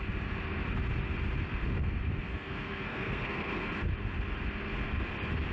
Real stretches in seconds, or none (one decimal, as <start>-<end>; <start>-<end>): 0.0-2.3; 3.7-5.5